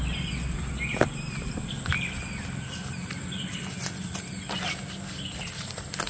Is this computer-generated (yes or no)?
no